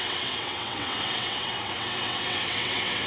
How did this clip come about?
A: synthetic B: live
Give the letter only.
A